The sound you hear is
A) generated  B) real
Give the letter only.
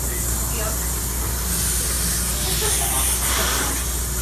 B